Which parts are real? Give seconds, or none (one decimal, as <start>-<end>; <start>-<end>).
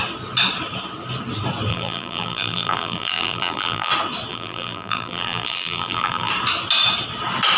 0.0-1.7; 3.9-4.3; 6.3-7.6